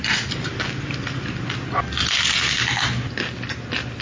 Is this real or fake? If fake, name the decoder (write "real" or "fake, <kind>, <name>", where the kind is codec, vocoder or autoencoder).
real